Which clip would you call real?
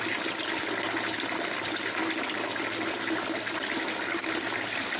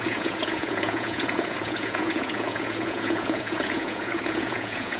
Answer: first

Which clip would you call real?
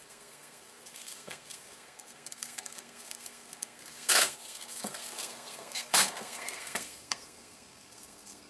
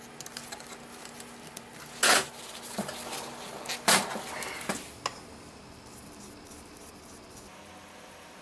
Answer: second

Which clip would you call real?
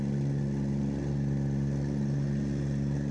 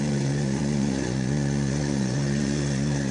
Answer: first